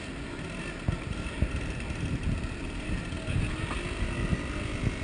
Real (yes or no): yes